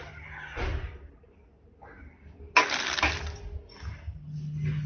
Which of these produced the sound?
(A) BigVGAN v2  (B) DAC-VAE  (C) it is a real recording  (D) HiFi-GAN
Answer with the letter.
C